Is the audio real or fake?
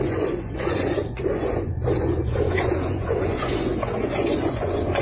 fake